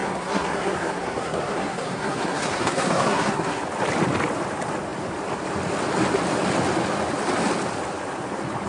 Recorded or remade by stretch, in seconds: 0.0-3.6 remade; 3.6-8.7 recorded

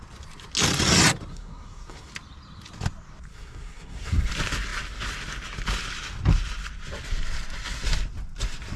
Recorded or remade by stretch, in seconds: 0.0-1.3 recorded; 1.3-2.1 remade; 2.1-3.3 recorded; 3.3-4.3 remade; 4.3-8.8 recorded

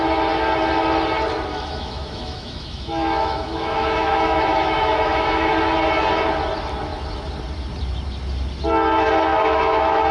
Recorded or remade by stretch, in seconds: 0.0-1.5 recorded; 1.5-5.5 remade; 5.5-9.3 recorded; 9.3-10.1 remade

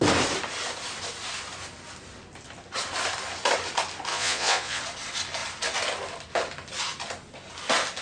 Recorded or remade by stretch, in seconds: 0.0-4.1 recorded; 4.1-4.8 remade; 4.8-8.0 recorded

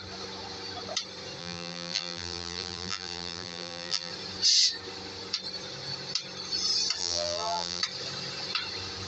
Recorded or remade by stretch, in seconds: 0.0-1.4 recorded; 1.4-4.1 remade; 4.1-7.0 recorded; 7.0-7.8 remade; 7.8-9.1 recorded